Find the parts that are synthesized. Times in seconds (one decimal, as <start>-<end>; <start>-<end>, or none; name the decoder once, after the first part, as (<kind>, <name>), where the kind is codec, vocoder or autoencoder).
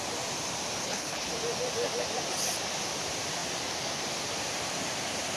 0.8-1.3 (codec, HILCodec)